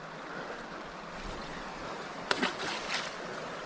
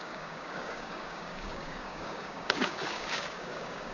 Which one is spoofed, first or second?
second